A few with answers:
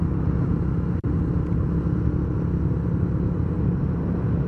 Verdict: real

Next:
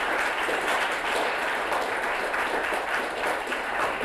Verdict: real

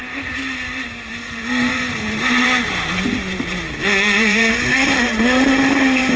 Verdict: fake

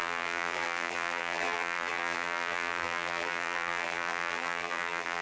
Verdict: fake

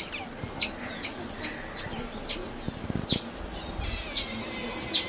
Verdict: real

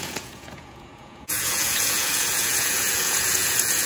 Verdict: fake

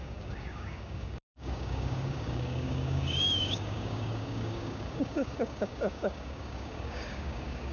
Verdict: fake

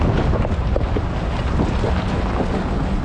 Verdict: real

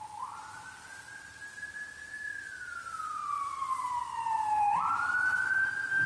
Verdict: real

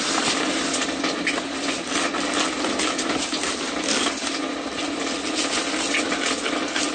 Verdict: real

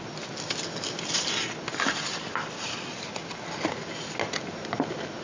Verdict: real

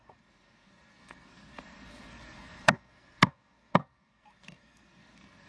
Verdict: fake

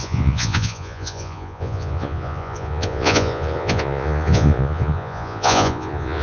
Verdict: fake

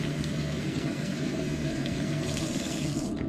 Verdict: fake